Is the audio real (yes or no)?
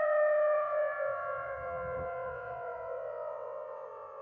no